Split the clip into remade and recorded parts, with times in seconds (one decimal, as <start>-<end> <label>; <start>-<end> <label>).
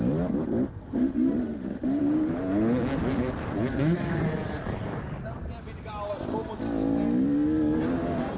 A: 0.0-1.0 recorded; 1.0-2.0 remade; 2.0-8.4 recorded